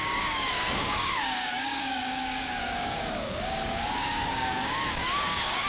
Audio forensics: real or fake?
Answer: fake